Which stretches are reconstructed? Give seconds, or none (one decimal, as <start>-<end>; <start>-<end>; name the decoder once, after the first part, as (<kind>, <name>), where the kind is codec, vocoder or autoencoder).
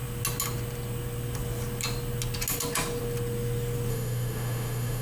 3.9-5.0 (autoencoder, DAC-VAE)